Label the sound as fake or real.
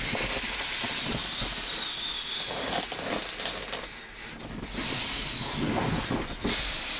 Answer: real